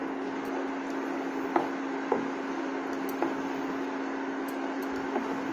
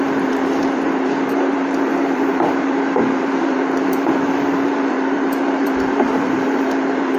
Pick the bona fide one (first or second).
first